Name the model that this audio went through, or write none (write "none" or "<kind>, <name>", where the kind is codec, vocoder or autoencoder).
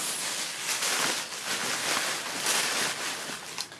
none